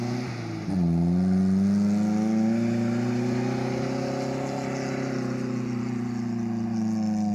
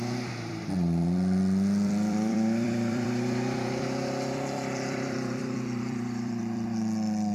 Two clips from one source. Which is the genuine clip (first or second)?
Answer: first